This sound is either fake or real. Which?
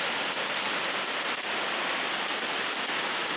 real